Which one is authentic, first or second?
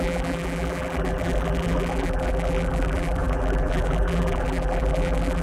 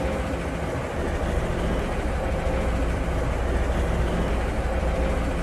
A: second